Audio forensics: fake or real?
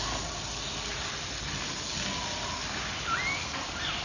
real